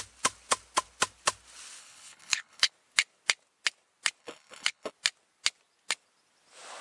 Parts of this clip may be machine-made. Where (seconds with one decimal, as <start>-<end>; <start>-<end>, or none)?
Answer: 1.8-2.7; 4.2-4.9